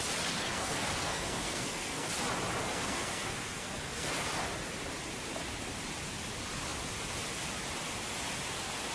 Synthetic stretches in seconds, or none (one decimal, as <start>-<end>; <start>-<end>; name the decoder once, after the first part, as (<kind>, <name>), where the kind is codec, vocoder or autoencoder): 0.4-2.1 (codec, SNAC); 2.6-4.3